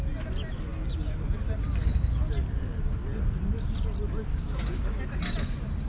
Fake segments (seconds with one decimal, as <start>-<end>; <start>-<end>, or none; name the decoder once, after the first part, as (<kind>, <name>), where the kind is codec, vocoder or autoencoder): 4.3-5.0 (codec, DAC)